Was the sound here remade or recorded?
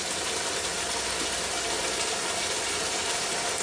recorded